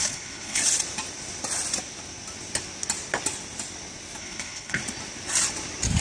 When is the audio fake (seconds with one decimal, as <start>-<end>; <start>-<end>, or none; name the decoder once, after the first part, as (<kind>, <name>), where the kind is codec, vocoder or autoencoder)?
0.0-0.6 (codec, HILCodec); 4.2-4.8